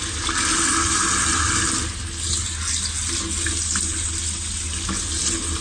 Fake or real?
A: real